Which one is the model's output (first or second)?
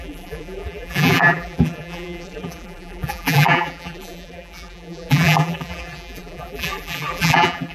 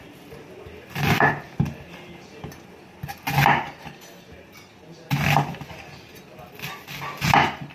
first